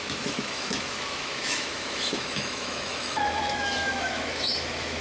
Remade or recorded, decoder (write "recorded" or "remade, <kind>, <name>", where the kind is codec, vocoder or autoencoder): remade, autoencoder, DAC-VAE